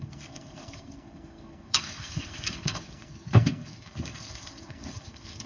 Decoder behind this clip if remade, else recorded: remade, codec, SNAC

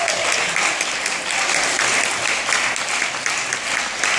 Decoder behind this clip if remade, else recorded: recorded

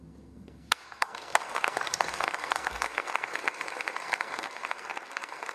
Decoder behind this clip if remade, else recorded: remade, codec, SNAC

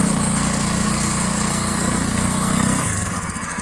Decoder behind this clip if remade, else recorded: remade, codec, SNAC